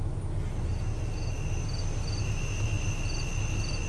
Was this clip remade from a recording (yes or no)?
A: no